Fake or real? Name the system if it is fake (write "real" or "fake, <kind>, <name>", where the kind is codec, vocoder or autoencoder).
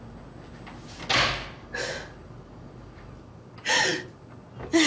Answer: real